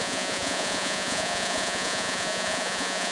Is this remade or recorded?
remade